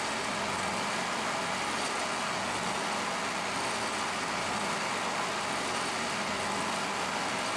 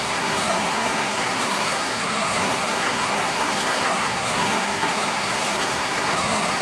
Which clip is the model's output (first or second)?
second